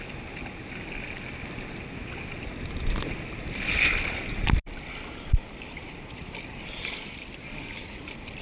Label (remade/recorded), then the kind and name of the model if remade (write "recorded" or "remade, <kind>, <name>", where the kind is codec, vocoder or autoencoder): recorded